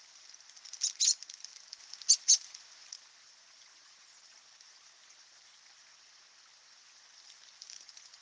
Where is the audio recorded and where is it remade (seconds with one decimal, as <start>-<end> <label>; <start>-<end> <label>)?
0.0-8.2 recorded